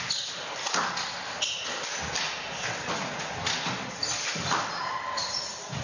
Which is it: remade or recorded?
recorded